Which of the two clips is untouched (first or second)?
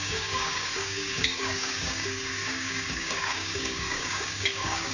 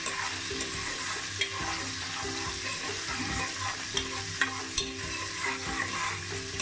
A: second